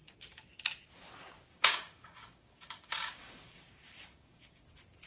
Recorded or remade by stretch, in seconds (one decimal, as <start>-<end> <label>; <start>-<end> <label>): 0.0-1.5 recorded; 1.5-4.6 remade; 4.6-5.1 recorded

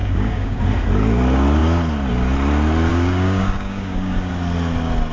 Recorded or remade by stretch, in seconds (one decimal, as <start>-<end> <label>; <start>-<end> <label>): 0.0-0.6 remade; 0.6-2.9 recorded; 2.9-4.3 remade; 4.3-5.1 recorded

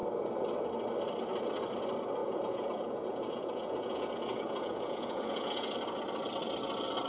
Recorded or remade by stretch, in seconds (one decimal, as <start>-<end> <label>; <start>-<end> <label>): 0.0-2.2 recorded; 2.2-5.7 remade; 5.7-7.1 recorded

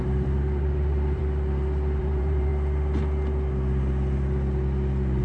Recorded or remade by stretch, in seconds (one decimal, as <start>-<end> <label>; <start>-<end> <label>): 0.0-1.2 remade; 1.2-2.0 recorded; 2.0-2.5 remade; 2.5-5.2 recorded

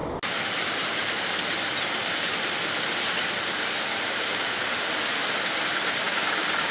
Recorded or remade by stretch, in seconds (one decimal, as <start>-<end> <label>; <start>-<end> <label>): 0.0-4.0 recorded; 4.0-4.7 remade; 4.7-6.1 recorded; 6.1-6.7 remade

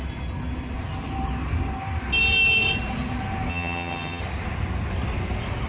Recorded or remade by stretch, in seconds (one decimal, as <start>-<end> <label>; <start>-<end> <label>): 0.0-3.5 recorded; 3.5-4.2 remade; 4.2-5.7 recorded

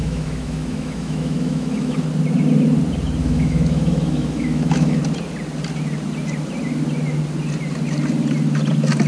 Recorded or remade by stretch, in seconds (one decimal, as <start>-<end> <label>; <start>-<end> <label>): 0.0-2.0 remade; 2.0-3.2 recorded; 3.2-5.0 remade; 5.0-9.1 recorded